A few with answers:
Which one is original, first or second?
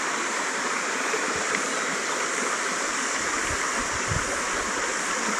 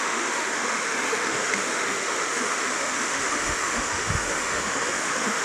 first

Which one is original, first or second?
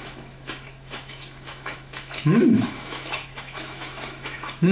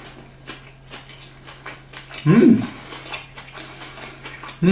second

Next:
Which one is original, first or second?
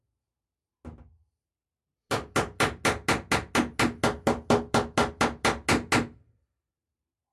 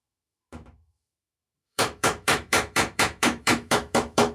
first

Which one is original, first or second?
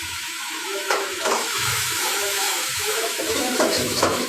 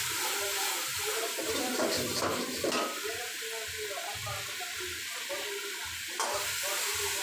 second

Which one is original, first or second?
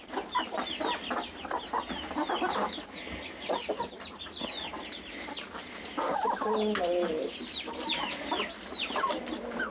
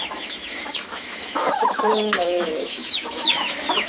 first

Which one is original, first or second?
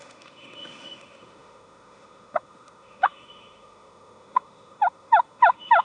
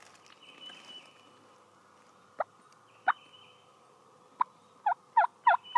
second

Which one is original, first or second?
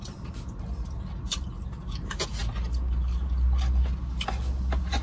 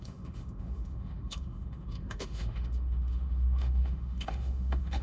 first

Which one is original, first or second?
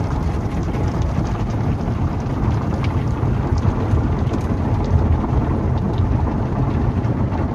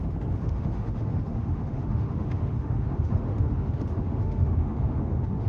first